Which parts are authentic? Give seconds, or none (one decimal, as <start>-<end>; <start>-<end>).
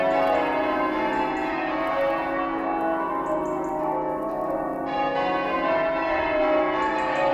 0.0-7.3